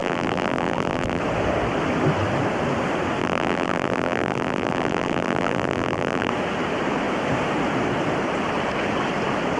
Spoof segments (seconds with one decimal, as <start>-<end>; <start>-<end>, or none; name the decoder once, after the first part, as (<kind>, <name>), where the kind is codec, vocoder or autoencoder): 0.0-1.2 (vocoder, BigVGAN v2); 3.2-6.3